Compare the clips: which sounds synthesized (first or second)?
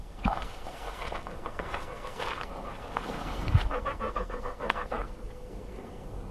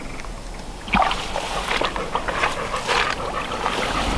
first